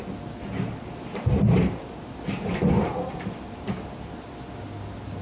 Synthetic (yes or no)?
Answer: no